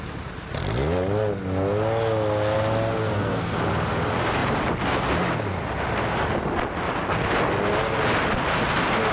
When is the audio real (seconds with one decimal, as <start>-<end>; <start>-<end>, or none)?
0.0-3.0; 3.6-9.1